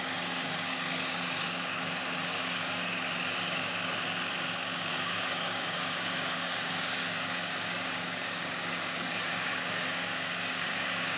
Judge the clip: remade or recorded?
remade